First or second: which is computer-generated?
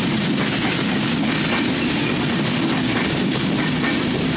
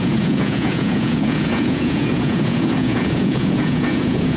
second